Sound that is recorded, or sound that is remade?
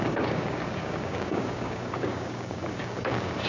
remade